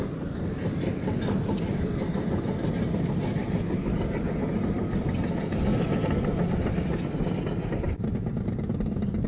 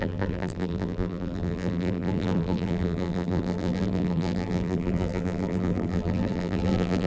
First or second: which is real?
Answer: first